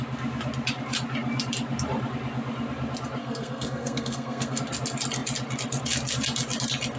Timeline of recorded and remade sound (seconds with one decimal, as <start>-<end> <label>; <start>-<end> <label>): 0.0-3.2 recorded; 3.2-4.6 remade; 4.6-7.0 recorded